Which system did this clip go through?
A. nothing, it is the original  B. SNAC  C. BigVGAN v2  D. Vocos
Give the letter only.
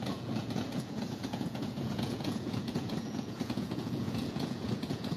D